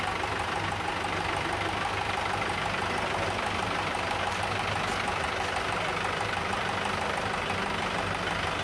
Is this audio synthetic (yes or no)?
no